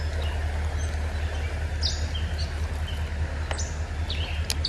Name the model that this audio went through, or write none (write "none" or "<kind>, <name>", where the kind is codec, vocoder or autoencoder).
none